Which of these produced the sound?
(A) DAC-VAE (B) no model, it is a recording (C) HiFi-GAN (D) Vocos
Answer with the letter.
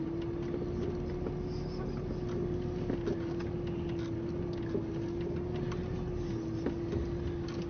B